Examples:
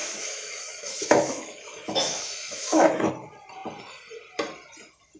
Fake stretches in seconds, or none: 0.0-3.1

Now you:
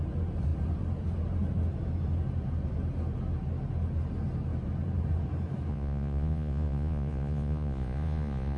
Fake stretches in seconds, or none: 5.7-8.6

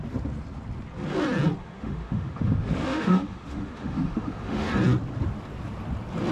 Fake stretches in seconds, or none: 1.6-4.7